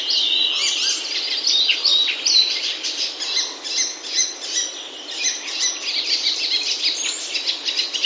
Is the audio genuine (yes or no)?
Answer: yes